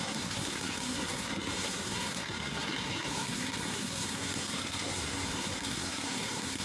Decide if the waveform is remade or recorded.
remade